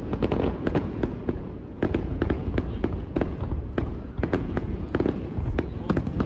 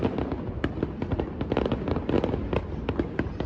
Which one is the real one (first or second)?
second